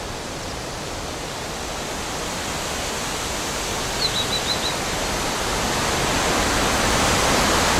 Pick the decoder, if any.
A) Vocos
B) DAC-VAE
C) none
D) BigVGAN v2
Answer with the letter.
C